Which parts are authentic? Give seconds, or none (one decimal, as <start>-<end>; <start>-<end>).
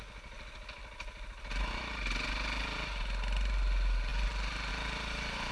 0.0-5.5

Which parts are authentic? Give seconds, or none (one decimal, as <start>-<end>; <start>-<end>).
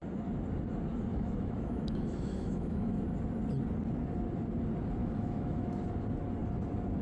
0.0-1.1; 3.0-5.0; 5.7-7.0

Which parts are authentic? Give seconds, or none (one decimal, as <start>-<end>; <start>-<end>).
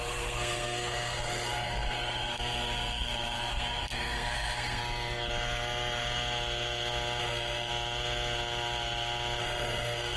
4.8-7.2; 7.7-9.4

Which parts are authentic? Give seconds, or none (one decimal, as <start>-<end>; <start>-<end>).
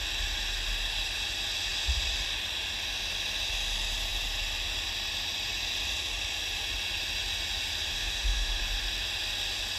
0.0-7.9; 8.6-9.8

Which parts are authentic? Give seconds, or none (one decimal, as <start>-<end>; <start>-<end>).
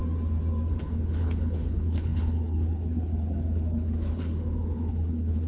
0.0-0.8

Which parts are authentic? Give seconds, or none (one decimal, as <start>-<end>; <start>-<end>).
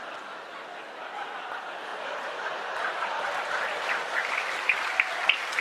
0.0-1.9; 3.9-5.6